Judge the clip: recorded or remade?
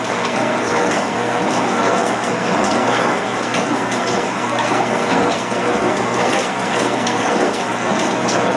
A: remade